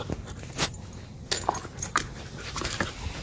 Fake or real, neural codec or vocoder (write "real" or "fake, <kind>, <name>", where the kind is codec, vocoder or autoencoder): real